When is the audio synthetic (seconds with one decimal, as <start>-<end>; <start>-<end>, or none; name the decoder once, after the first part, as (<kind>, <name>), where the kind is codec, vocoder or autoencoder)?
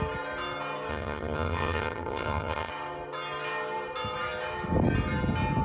0.9-2.7 (vocoder, HiFi-GAN)